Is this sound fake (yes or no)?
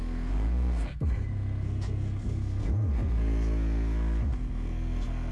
yes